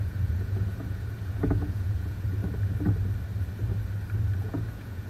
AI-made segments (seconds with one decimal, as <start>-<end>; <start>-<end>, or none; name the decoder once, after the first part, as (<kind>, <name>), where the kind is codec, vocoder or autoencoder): 0.0-2.4 (vocoder, Vocos); 4.4-5.1